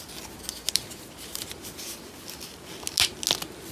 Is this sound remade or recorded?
recorded